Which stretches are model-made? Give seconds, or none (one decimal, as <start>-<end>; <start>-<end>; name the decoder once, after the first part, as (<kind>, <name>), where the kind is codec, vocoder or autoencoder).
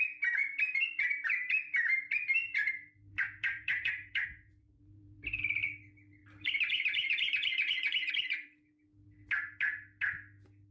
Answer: 0.4-5.4 (vocoder, BigVGAN v2); 6.2-8.1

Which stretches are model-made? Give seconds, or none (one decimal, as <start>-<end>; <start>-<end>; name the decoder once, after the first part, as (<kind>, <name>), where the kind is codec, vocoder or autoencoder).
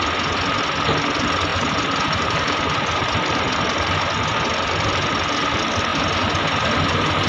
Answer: 1.5-4.0 (vocoder, BigVGAN v2)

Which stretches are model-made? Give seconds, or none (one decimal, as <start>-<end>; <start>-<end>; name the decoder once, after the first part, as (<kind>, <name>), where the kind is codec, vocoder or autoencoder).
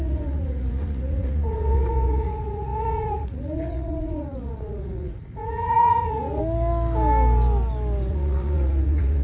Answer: 0.0-6.4 (vocoder, Vocos); 8.1-9.2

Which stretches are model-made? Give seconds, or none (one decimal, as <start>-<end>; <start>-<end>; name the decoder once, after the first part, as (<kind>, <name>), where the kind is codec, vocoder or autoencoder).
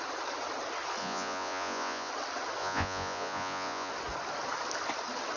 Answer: 1.0-2.1 (vocoder, Vocos); 2.6-3.9